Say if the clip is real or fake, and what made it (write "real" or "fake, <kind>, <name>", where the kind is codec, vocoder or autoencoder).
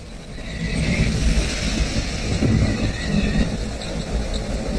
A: real